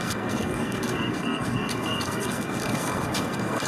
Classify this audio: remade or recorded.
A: remade